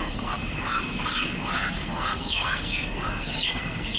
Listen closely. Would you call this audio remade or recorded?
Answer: remade